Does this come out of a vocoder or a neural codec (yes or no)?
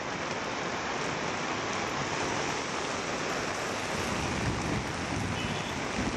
no